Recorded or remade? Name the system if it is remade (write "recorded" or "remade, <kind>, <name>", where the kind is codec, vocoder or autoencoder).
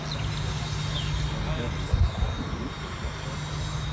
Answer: recorded